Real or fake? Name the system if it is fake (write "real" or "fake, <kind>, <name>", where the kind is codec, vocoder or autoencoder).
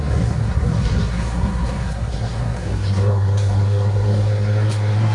fake, codec, SNAC